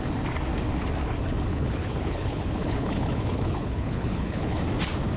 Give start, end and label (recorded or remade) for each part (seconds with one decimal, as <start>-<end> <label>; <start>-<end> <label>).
0.0-1.5 recorded; 1.5-4.6 remade; 4.6-5.2 recorded